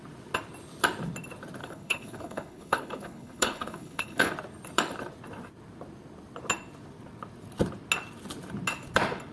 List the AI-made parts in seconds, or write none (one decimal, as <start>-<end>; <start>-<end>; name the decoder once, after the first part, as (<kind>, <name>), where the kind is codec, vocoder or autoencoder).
1.6-4.3 (codec, HILCodec)